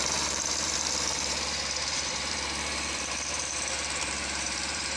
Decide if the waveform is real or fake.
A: fake